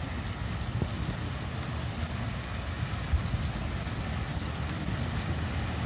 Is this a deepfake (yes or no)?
no